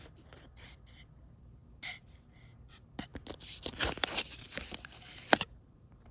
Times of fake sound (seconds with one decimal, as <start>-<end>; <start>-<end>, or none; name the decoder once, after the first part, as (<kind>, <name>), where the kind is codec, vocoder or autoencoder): 0.0-1.6 (vocoder, BigVGAN v2); 2.7-3.1; 3.8-6.1